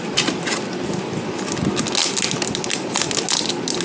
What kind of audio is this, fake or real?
real